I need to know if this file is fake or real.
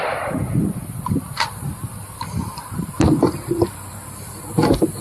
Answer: fake